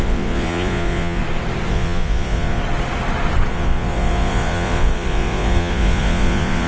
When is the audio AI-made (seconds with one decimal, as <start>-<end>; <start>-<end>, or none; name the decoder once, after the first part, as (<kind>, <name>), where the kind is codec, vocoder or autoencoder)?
0.0-1.2 (vocoder, Vocos); 1.7-2.6; 3.5-6.7